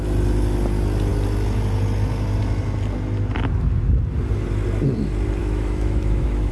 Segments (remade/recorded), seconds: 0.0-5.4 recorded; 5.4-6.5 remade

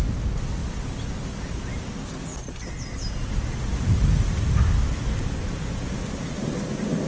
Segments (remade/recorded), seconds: 0.0-7.1 recorded

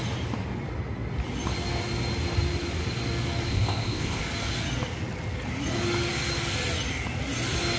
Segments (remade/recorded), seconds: 0.0-3.5 recorded; 3.5-4.2 remade; 4.2-7.8 recorded

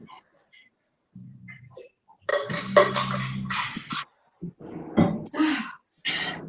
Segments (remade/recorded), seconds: 0.0-2.3 remade; 2.3-6.1 recorded; 6.1-6.5 remade

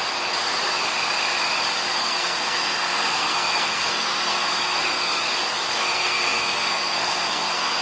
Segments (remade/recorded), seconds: 0.0-2.0 recorded; 2.0-5.2 remade; 5.2-5.7 recorded; 5.7-7.8 remade